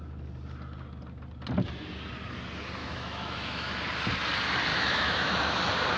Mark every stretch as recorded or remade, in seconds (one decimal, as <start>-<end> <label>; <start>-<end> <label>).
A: 0.0-2.8 recorded; 2.8-3.8 remade; 3.8-4.7 recorded; 4.7-5.6 remade; 5.6-6.0 recorded

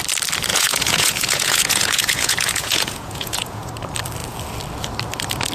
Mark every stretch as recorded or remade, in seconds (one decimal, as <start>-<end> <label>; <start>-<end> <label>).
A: 0.0-0.5 recorded; 0.5-3.7 remade; 3.7-5.5 recorded

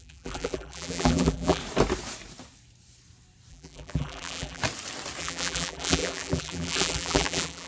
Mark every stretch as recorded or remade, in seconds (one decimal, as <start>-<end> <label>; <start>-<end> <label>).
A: 0.0-1.6 remade; 1.6-3.5 recorded; 3.5-4.6 remade; 4.6-5.2 recorded; 5.2-7.7 remade